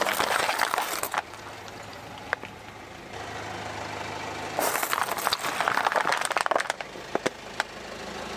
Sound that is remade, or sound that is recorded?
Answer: recorded